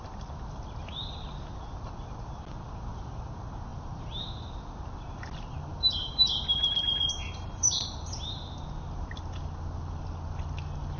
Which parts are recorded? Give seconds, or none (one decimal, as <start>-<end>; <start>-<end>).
0.0-3.7; 4.3-5.7; 8.4-11.0